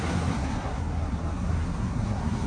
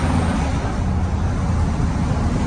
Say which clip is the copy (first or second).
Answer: first